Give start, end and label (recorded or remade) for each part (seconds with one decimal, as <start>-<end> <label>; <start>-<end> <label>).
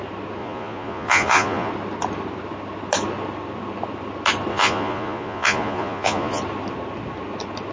0.0-0.4 recorded; 0.4-1.7 remade; 1.7-4.5 recorded; 4.5-6.4 remade; 6.4-7.7 recorded